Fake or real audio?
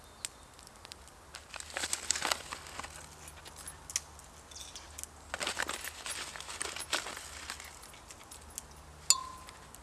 real